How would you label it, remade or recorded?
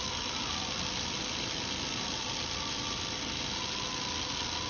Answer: recorded